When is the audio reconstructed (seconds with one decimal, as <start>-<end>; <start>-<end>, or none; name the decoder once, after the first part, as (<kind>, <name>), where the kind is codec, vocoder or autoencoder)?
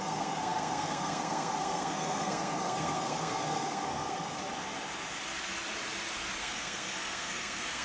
0.0-4.4 (codec, SNAC); 6.4-7.8